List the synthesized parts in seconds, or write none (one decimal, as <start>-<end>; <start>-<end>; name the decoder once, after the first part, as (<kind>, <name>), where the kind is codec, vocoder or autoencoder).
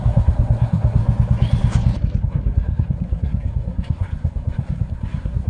0.0-1.0 (codec, SNAC); 2.2-5.5